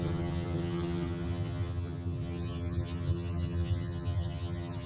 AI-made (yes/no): yes